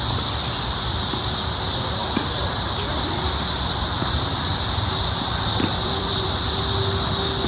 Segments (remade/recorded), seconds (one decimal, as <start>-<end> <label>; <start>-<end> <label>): 0.0-2.0 recorded; 2.0-6.5 remade; 6.5-7.5 recorded